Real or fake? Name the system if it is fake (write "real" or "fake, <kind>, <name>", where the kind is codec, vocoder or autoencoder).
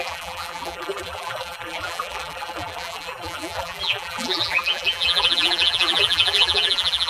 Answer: fake, vocoder, BigVGAN v2